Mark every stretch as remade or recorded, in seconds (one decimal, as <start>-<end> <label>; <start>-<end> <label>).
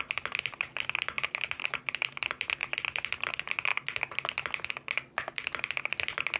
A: 0.0-2.6 recorded; 2.6-3.3 remade; 3.3-6.4 recorded